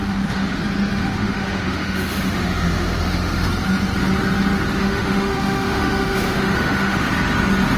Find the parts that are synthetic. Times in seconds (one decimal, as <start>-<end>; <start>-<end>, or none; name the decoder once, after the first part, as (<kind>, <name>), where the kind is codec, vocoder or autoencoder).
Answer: 0.0-0.6 (autoencoder, DAC-VAE); 1.0-3.5; 4.8-7.1